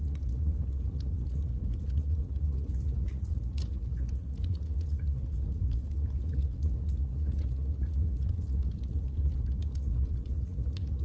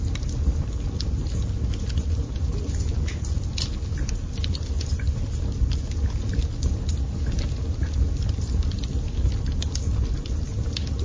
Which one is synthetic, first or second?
first